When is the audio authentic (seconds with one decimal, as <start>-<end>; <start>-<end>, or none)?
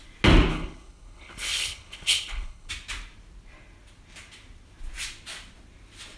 0.0-0.5; 2.7-6.2